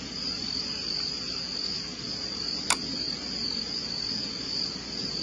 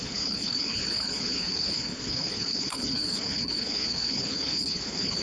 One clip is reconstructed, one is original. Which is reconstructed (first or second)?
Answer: second